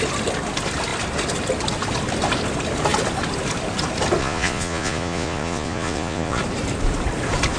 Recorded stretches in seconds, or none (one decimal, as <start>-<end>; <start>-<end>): 0.0-4.2; 6.4-7.6